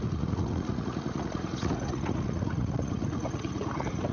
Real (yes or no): no